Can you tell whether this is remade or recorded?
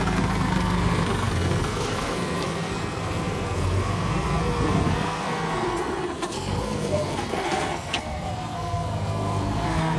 remade